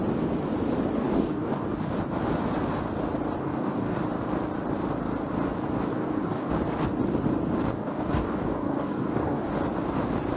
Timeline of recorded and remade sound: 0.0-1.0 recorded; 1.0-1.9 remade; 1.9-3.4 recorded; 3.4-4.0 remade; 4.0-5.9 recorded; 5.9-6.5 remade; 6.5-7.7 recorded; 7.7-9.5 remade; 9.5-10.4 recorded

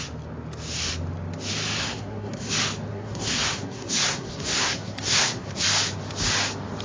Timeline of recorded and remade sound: 0.0-1.8 recorded; 1.8-2.5 remade; 2.5-2.9 recorded; 2.9-5.6 remade; 5.6-6.8 recorded

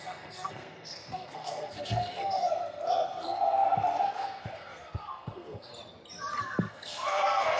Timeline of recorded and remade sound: 0.0-5.7 remade; 5.7-6.4 recorded; 6.4-7.6 remade

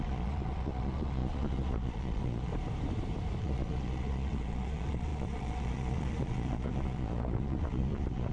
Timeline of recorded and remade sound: 0.0-2.5 remade; 2.5-3.4 recorded; 3.4-8.3 remade